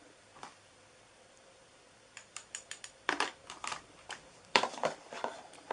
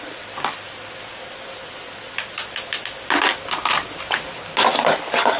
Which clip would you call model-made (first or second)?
first